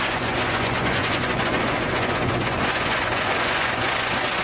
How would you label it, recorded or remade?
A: remade